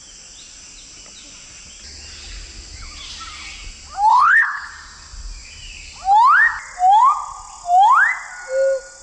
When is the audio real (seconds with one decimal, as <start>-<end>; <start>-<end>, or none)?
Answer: 0.0-4.1; 4.7-9.0